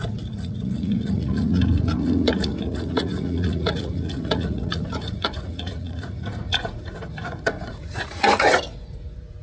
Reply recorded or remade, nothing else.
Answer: remade